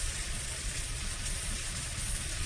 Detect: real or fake fake